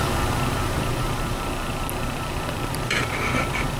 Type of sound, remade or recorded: remade